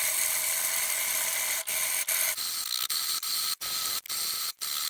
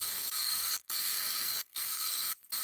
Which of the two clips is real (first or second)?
first